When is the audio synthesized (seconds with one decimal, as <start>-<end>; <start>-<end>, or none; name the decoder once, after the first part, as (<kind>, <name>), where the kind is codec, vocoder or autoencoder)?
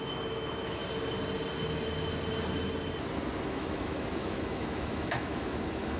0.0-0.8 (autoencoder, DAC-VAE); 3.5-6.0